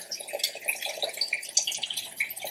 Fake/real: real